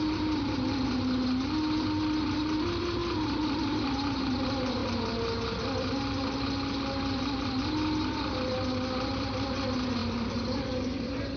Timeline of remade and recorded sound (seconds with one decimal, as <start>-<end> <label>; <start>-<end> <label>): 0.0-11.4 recorded